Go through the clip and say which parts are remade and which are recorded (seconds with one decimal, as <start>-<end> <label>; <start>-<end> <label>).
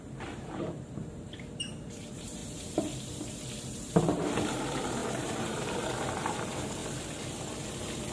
0.0-6.8 remade; 6.8-8.1 recorded